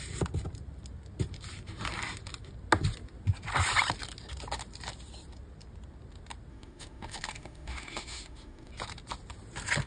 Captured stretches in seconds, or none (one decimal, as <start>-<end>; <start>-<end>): 0.0-6.5; 8.7-9.9